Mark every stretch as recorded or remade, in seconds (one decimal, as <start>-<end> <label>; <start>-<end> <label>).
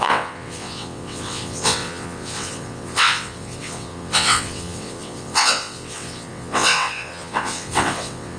0.0-8.4 remade